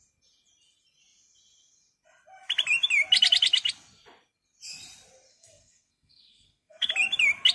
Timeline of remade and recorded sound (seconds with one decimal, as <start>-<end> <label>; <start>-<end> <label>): 0.0-5.3 recorded; 5.3-6.9 remade; 6.9-7.5 recorded